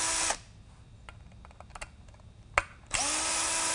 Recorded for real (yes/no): yes